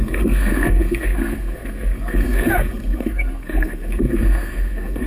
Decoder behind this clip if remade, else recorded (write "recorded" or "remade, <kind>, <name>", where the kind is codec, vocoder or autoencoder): remade, codec, SNAC